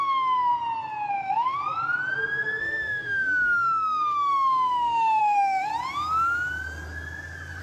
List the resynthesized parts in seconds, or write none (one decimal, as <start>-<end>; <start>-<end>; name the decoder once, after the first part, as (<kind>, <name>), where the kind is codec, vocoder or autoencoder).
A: 0.0-0.5 (autoencoder, DAC-VAE); 1.1-1.6; 2.6-5.7